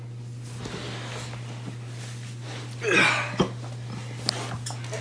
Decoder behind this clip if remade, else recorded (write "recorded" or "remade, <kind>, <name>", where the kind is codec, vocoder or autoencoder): recorded